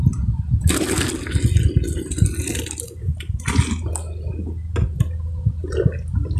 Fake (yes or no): no